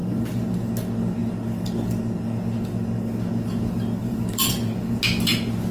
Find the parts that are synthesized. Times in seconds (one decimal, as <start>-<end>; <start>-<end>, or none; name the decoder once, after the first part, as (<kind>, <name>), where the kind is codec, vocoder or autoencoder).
0.0-0.7 (vocoder, BigVGAN v2); 4.0-5.0